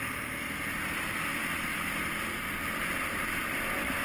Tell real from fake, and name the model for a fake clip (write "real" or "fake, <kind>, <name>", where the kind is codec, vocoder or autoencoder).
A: fake, vocoder, BigVGAN v2